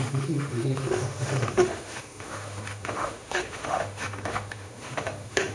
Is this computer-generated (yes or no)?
yes